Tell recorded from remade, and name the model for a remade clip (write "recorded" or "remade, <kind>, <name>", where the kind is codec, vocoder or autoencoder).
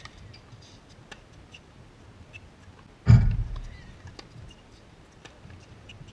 recorded